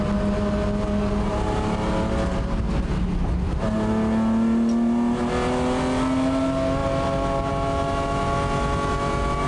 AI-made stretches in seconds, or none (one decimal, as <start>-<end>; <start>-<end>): none